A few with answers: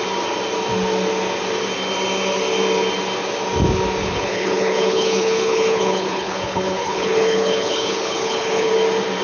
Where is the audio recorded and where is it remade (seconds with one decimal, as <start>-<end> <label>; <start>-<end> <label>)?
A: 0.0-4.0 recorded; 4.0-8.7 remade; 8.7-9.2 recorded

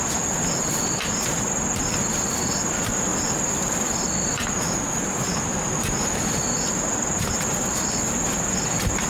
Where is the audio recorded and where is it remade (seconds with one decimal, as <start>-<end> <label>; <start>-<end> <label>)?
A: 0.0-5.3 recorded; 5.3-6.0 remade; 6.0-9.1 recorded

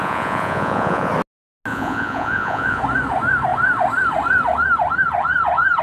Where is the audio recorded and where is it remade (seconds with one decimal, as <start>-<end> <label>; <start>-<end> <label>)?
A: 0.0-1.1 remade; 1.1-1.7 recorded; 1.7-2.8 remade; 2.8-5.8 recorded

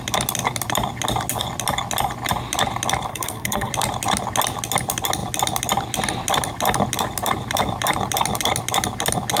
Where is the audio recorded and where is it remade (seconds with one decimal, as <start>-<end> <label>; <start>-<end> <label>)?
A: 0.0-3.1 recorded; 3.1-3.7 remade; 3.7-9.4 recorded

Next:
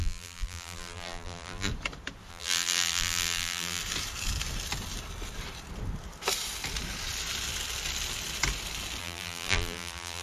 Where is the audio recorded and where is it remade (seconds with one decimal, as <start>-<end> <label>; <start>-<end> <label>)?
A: 0.0-1.7 remade; 1.7-2.3 recorded; 2.3-3.8 remade; 3.8-9.0 recorded; 9.0-10.2 remade

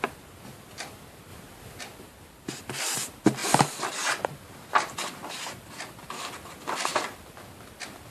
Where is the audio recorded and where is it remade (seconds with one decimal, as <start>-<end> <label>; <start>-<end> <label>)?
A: 0.0-3.4 remade; 3.4-4.5 recorded; 4.5-6.9 remade; 6.9-8.1 recorded

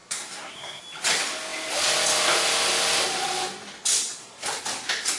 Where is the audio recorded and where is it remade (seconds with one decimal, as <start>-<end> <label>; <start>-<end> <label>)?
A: 0.0-0.8 remade; 0.8-5.2 recorded